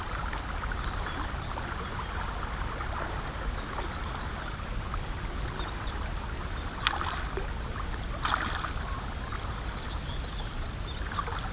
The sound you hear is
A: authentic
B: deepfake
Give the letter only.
A